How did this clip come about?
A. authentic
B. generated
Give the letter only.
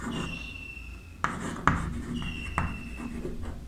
A